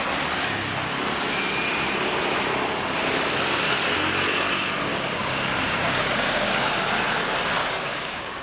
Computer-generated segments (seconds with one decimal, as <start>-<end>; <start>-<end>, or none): 4.9-6.7; 7.6-8.4